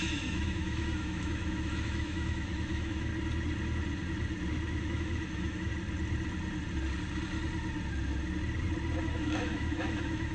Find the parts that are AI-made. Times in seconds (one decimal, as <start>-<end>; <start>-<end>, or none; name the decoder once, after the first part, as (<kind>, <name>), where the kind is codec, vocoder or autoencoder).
0.0-3.1 (autoencoder, DAC-VAE); 4.8-5.7; 9.0-10.3